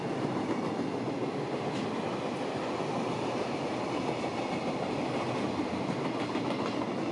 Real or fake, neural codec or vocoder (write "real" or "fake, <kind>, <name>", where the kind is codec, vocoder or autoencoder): real